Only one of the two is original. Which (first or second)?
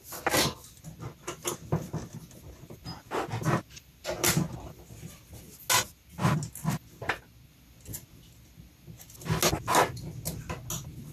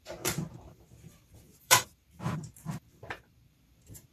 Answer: first